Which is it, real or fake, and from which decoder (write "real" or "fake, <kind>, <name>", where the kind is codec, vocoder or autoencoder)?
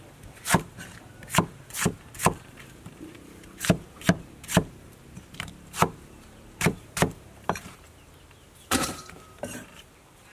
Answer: fake, vocoder, BigVGAN v2